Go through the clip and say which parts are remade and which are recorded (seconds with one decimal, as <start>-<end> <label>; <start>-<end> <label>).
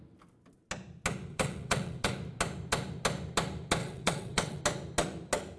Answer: 0.0-1.3 recorded; 1.3-2.1 remade; 2.1-3.8 recorded; 3.8-4.6 remade; 4.6-5.6 recorded